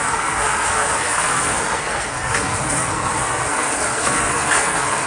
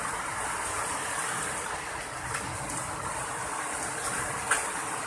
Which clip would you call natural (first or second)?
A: second